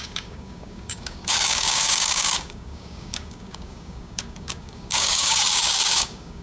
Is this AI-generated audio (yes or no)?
yes